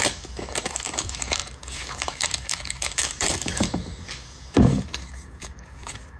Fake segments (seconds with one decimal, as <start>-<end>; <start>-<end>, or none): 0.0-6.2